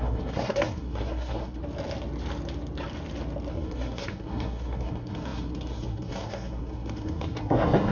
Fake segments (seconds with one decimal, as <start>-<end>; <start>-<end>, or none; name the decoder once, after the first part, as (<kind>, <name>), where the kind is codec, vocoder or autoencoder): 0.0-1.6 (codec, SNAC); 3.5-7.9

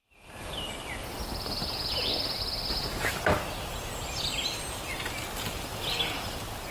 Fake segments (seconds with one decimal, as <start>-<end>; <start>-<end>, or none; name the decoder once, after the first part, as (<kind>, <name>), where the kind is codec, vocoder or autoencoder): none

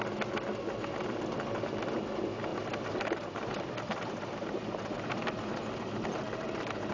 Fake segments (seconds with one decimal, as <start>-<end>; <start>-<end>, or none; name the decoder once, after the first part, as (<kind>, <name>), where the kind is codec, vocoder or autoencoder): 2.5-6.9 (vocoder, BigVGAN v2)

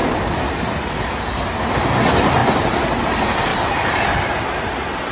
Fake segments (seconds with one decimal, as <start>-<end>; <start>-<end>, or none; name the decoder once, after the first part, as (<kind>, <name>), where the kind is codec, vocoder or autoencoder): 2.4-3.0 (vocoder, BigVGAN v2); 3.5-4.5

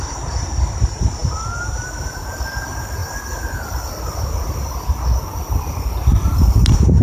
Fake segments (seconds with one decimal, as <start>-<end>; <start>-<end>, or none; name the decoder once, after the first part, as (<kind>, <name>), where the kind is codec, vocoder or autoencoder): none

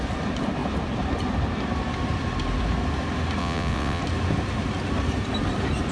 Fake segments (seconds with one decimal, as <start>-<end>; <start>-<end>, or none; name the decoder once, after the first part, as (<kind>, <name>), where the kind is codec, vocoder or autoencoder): 3.4-4.0 (vocoder, WaveNeXt)

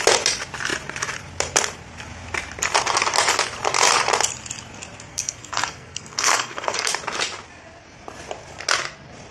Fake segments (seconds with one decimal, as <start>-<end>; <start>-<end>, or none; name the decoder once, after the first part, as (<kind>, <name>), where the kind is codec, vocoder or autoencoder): 5.1-6.9 (codec, SNAC)